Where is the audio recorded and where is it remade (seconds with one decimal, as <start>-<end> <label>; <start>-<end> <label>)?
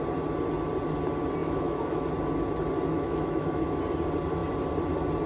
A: 0.0-1.4 recorded; 1.4-2.1 remade; 2.1-2.9 recorded; 2.9-3.8 remade; 3.8-5.3 recorded